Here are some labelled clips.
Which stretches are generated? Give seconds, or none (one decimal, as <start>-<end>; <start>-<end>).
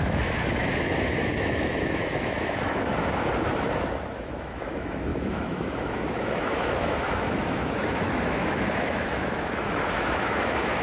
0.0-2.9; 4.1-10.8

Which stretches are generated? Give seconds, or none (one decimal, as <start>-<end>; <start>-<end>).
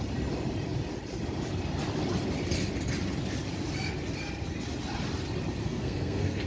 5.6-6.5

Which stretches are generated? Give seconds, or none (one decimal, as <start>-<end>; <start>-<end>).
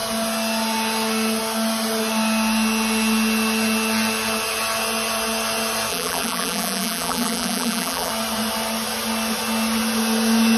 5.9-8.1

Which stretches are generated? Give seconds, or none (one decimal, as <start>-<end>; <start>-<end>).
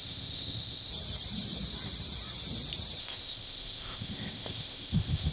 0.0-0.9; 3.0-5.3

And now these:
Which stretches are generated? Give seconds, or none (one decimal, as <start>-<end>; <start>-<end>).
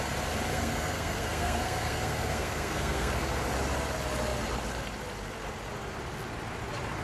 0.5-3.1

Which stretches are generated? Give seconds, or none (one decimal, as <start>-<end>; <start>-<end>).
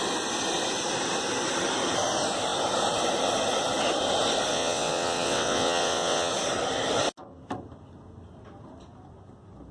4.5-6.3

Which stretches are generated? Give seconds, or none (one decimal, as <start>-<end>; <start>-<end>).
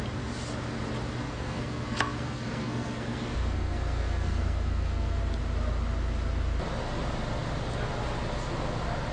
1.2-5.2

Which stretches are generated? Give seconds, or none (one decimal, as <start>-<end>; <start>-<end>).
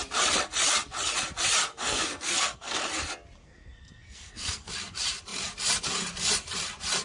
1.7-2.8; 3.4-4.7